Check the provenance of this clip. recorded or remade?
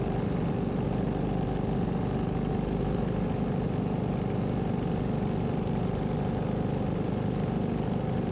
recorded